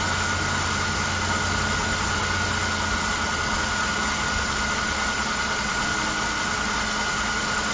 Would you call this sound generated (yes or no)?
no